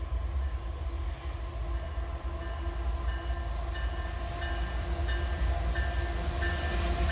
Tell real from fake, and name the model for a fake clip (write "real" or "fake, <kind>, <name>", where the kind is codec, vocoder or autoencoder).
real